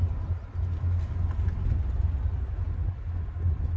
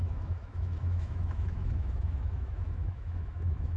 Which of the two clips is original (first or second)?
first